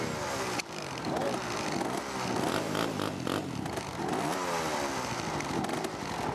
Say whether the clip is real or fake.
real